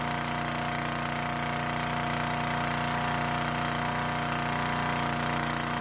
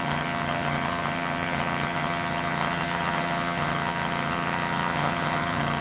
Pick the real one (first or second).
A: first